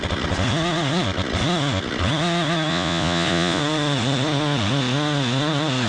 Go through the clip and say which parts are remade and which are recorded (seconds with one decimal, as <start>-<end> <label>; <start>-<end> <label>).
0.0-2.7 recorded; 2.7-3.6 remade; 3.6-5.9 recorded